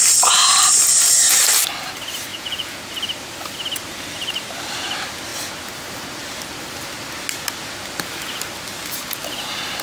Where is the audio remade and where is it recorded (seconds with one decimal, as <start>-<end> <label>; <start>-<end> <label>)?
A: 0.0-2.3 recorded; 2.3-2.8 remade; 2.8-9.8 recorded